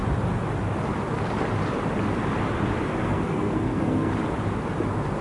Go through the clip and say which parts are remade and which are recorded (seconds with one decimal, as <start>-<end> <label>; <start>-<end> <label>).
0.0-3.0 recorded; 3.0-4.1 remade; 4.1-5.2 recorded